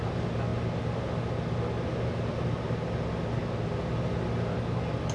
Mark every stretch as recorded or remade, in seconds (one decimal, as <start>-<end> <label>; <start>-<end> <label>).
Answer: 0.0-5.1 recorded